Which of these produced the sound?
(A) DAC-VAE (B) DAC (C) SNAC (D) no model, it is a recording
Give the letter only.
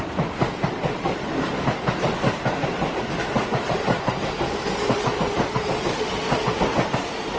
D